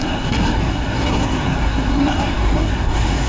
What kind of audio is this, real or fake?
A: fake